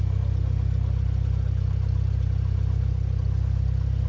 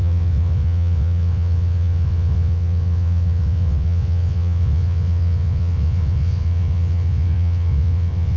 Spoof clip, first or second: second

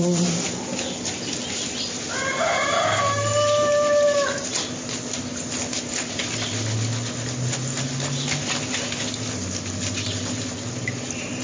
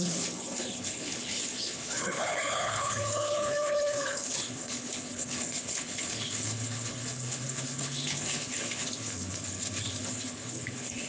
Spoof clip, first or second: second